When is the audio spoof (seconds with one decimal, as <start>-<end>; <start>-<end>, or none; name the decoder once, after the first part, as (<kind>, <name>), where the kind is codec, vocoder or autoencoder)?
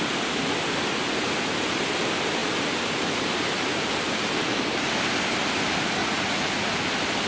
6.0-6.7 (vocoder, Vocos)